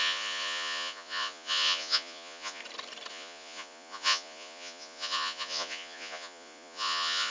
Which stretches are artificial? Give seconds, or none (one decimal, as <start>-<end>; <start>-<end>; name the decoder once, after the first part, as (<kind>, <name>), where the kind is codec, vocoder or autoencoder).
0.0-2.6 (vocoder, Vocos); 3.1-7.3

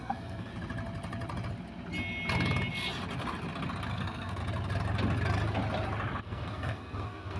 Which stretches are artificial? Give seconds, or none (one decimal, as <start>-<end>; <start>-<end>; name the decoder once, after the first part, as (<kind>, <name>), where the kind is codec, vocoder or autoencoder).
0.0-0.5 (codec, SNAC); 3.9-4.4; 6.2-7.4